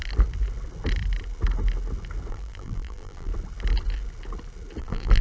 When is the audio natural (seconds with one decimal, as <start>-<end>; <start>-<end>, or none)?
0.0-2.3; 3.3-4.8